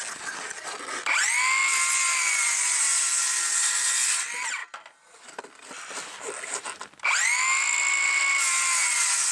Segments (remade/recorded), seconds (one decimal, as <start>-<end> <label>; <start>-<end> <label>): 0.0-9.3 recorded